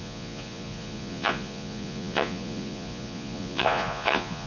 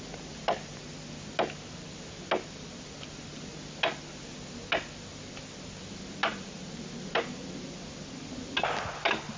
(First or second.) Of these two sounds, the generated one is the first